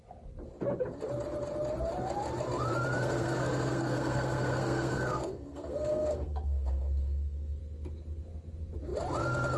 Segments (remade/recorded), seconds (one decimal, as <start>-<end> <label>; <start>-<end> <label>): 0.0-3.0 recorded; 3.0-7.6 remade; 7.6-9.6 recorded